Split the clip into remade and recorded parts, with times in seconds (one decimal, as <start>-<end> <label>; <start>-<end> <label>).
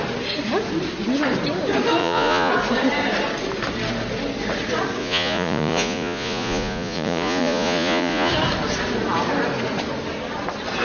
0.0-2.0 recorded; 2.0-2.5 remade; 2.5-5.0 recorded; 5.0-8.3 remade; 8.3-10.8 recorded